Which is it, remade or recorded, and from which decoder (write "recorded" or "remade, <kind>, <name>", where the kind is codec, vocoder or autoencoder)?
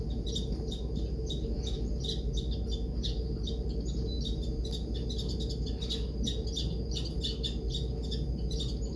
recorded